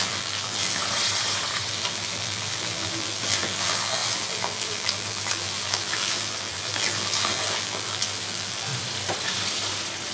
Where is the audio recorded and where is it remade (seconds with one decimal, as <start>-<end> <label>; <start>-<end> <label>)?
0.0-0.8 remade; 0.8-1.7 recorded; 1.7-8.7 remade; 8.7-10.1 recorded